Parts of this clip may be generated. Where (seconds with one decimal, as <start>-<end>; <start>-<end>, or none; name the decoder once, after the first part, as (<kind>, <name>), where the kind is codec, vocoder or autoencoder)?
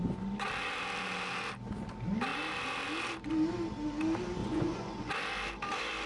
4.4-5.1 (vocoder, Vocos)